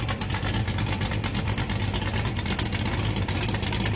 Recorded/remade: recorded